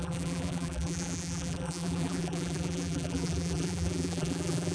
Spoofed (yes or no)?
yes